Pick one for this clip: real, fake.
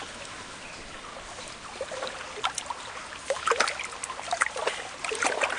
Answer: real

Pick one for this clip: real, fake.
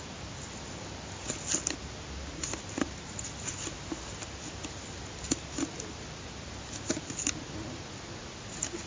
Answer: real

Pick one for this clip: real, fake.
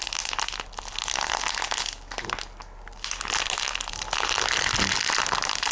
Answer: real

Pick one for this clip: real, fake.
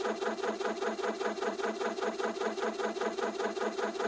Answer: real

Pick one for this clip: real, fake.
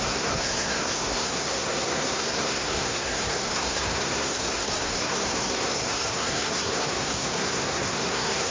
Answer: fake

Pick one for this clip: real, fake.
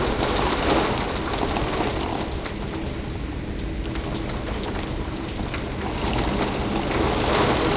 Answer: real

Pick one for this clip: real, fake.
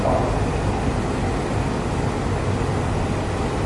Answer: real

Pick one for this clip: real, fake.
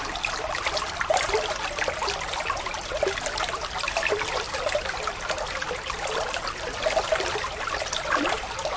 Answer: real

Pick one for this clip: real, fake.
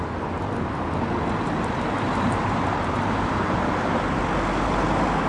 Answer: real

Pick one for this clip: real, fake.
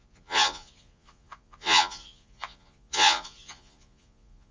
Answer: fake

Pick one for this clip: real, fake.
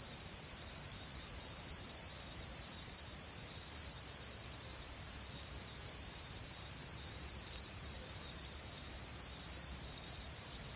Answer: fake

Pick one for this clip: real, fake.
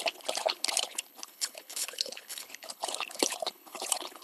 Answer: fake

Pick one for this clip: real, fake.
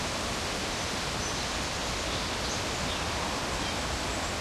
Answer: real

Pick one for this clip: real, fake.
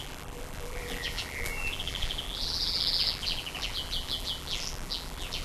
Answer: fake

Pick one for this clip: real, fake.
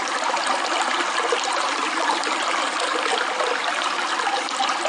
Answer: real